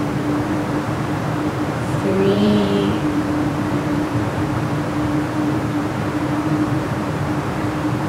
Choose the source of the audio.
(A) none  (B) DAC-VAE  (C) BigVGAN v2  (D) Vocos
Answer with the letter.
C